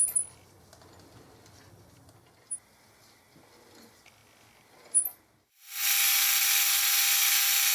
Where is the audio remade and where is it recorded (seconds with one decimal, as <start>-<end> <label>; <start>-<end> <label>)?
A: 0.0-7.7 recorded

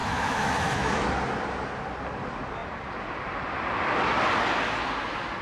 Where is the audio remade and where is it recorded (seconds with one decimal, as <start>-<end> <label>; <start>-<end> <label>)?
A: 0.0-1.1 remade; 1.1-5.4 recorded